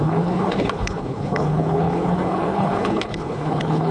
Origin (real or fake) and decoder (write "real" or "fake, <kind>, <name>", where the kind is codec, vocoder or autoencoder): fake, codec, HILCodec